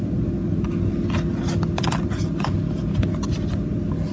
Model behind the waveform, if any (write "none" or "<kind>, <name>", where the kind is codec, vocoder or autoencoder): none